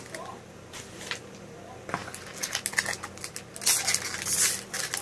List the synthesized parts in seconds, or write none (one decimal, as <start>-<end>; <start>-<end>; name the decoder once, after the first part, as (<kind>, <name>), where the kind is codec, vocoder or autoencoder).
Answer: 0.0-2.0 (vocoder, BigVGAN v2); 4.2-5.0